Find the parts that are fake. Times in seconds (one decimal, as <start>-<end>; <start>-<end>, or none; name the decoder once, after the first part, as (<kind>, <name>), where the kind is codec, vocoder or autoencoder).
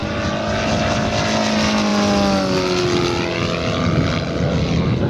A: none